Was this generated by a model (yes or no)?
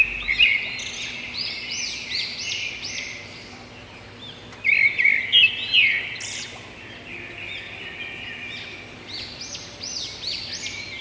no